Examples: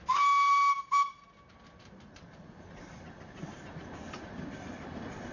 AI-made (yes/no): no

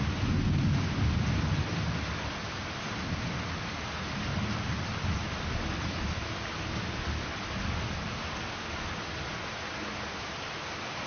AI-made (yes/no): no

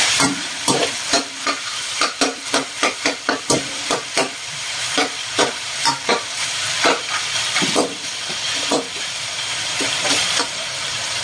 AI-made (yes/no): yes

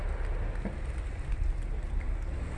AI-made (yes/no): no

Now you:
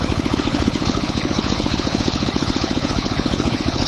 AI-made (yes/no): yes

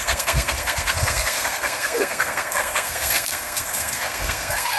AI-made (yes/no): yes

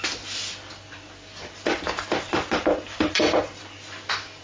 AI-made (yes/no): no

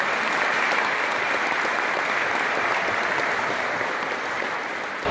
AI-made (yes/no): no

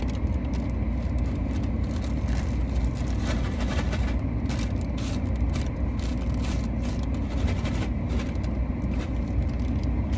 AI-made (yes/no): no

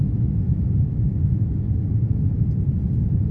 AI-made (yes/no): no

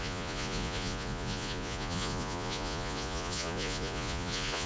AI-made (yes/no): yes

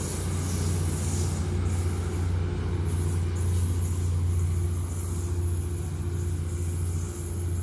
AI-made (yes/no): no